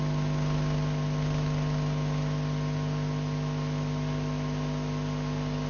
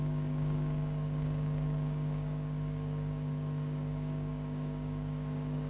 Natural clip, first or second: first